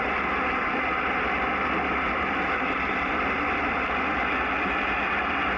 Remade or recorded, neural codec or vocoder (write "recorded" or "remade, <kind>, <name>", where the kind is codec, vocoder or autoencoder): recorded